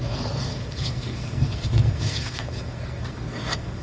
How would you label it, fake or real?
fake